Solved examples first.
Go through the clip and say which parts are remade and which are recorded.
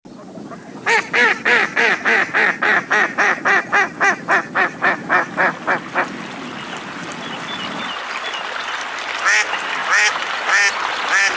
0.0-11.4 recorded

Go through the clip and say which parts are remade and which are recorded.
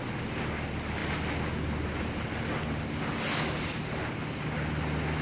0.0-5.2 recorded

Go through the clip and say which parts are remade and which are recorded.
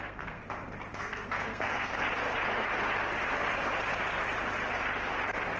0.0-0.4 remade; 0.4-0.9 recorded; 0.9-1.9 remade; 1.9-5.6 recorded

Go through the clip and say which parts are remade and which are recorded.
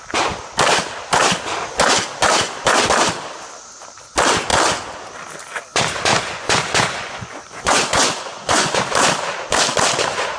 0.0-6.1 recorded; 6.1-8.8 remade; 8.8-10.4 recorded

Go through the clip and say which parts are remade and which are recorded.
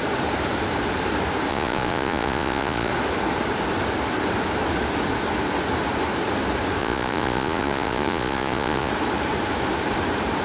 0.0-1.5 recorded; 1.5-2.9 remade; 2.9-6.8 recorded; 6.8-8.9 remade; 8.9-10.4 recorded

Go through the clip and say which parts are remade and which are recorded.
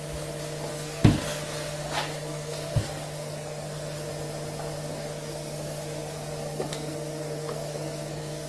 0.0-0.7 recorded; 0.7-4.1 remade; 4.1-4.9 recorded; 4.9-8.5 remade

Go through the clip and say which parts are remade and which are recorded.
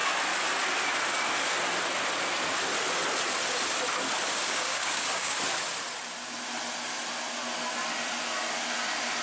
0.0-4.3 recorded; 4.3-5.4 remade; 5.4-9.2 recorded